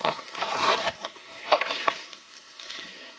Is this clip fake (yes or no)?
yes